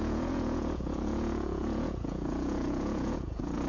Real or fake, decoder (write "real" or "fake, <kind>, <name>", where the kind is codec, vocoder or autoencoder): fake, vocoder, Vocos